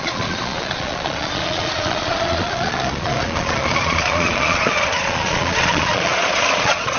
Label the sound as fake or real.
fake